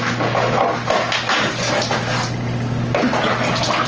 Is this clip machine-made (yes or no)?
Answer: no